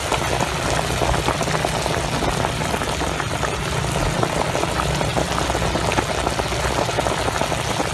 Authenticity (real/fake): real